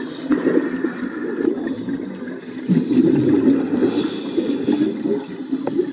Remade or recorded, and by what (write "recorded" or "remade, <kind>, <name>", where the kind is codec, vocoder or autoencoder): recorded